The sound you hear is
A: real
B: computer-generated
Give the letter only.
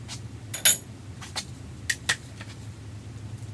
A